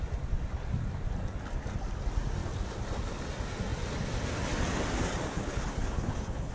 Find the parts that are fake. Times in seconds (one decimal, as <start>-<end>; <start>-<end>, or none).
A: 5.3-6.5